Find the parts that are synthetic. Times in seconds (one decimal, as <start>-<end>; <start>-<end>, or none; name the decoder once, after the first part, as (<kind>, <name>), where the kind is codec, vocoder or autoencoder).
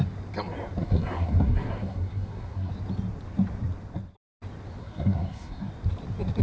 0.8-2.7 (codec, SNAC); 4.8-5.7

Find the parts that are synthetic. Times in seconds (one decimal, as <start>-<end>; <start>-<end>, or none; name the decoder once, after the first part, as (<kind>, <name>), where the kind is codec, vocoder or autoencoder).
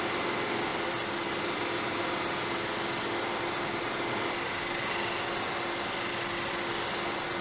none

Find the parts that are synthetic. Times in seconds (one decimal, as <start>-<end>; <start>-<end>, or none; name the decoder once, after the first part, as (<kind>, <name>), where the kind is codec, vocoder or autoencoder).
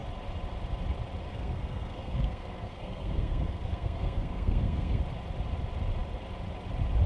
1.3-5.0 (codec, SNAC)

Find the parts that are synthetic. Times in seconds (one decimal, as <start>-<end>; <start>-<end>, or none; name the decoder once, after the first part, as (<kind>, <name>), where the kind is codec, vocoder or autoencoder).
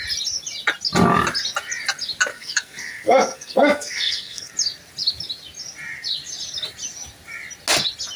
2.3-4.5 (codec, SNAC)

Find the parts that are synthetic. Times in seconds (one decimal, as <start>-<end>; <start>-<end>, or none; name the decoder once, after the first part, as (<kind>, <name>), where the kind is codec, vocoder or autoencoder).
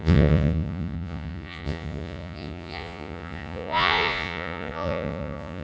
0.0-5.6 (vocoder, Vocos)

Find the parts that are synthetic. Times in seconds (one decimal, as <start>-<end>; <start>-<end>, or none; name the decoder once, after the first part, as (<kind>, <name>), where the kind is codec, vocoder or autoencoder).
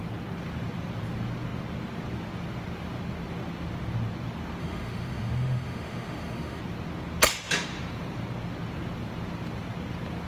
4.6-6.6 (autoencoder, DAC-VAE)